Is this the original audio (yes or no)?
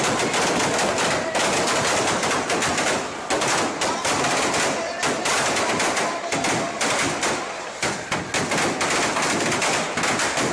yes